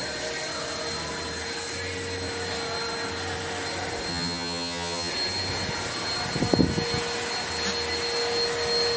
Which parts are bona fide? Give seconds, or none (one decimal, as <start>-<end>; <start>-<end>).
0.0-4.1; 5.1-9.0